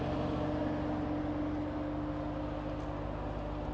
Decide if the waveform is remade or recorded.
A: recorded